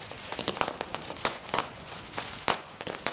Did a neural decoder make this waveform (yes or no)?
yes